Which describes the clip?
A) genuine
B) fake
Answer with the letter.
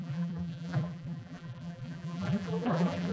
B